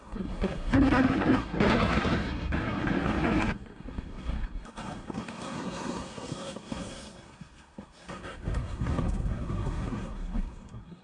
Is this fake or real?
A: fake